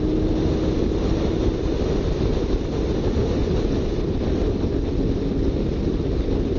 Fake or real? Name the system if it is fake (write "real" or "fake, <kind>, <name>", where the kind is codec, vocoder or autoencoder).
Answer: real